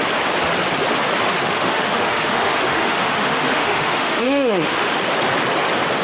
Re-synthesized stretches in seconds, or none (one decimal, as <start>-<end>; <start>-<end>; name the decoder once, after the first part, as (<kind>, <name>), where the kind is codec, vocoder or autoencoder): 1.3-4.9 (autoencoder, DAC-VAE)